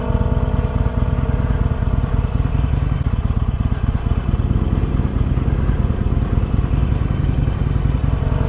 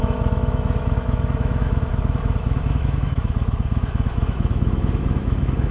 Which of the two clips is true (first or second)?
first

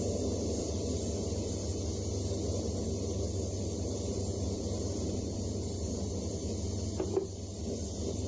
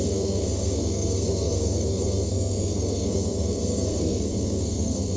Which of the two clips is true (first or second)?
first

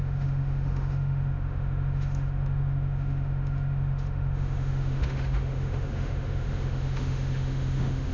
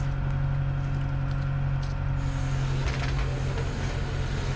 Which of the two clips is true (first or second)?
second